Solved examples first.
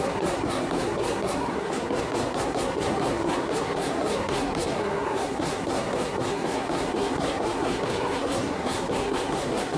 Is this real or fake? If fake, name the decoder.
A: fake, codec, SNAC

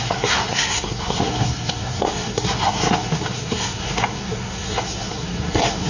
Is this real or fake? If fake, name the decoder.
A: fake, codec, SNAC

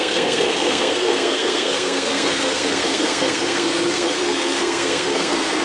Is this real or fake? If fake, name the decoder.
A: fake, codec, SNAC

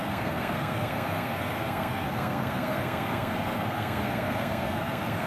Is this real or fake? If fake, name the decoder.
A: fake, codec, SNAC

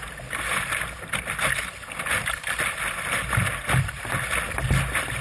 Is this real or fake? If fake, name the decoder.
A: real